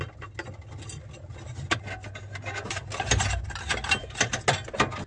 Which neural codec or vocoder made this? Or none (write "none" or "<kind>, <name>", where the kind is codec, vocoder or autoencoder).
none